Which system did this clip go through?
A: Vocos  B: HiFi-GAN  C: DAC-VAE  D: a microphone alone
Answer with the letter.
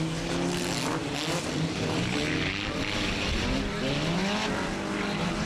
D